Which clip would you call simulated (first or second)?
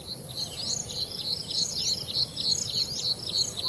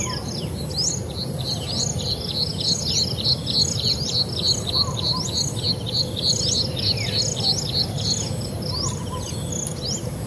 first